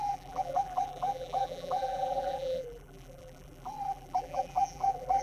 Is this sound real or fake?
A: fake